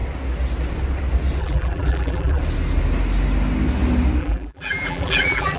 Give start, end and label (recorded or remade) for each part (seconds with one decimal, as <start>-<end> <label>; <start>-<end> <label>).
0.0-1.4 recorded; 1.4-2.4 remade; 2.4-4.2 recorded; 4.2-5.6 remade